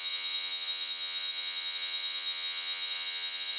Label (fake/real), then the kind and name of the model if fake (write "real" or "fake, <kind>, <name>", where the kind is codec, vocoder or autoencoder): fake, vocoder, Vocos